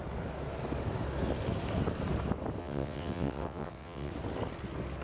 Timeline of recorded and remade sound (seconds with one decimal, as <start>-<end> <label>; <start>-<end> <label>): 0.0-2.6 recorded; 2.6-4.1 remade; 4.1-5.0 recorded